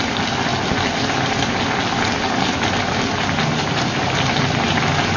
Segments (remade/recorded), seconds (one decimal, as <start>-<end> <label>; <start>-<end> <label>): 0.0-5.2 recorded